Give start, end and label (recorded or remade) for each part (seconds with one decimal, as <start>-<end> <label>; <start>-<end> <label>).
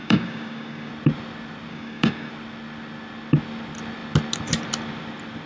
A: 0.0-0.9 remade; 0.9-1.7 recorded; 1.7-2.3 remade; 2.3-5.5 recorded